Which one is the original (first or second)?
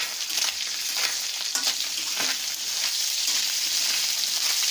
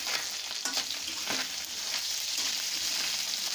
second